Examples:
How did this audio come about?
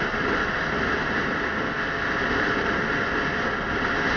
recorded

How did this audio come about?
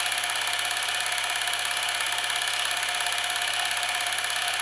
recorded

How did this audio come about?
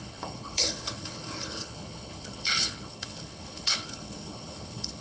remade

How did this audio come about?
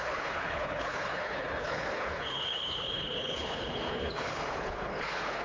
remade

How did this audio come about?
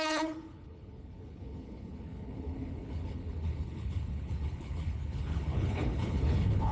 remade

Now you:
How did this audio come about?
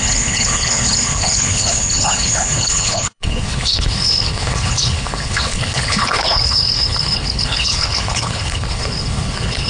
remade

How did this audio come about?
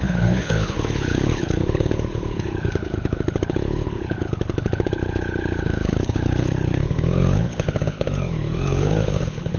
remade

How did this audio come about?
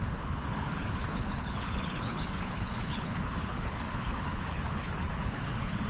remade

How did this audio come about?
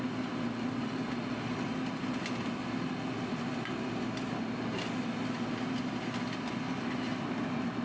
recorded